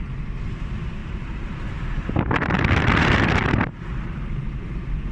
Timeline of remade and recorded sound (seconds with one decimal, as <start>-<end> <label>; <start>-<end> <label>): 0.0-1.0 recorded; 1.0-1.5 remade; 1.5-5.1 recorded